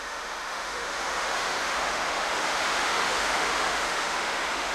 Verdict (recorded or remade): remade